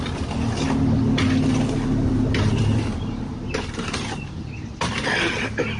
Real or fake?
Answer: real